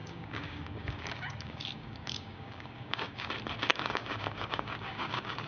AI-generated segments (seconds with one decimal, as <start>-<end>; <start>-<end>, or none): 0.0-3.3; 3.7-5.5

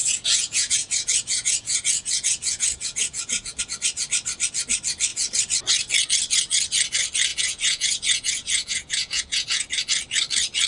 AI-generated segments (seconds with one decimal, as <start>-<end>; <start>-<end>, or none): 0.0-3.6; 7.3-9.7

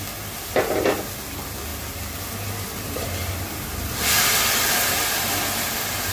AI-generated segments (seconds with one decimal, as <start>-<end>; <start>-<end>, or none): none